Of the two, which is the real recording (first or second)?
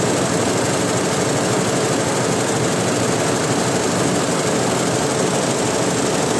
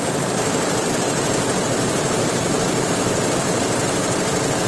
first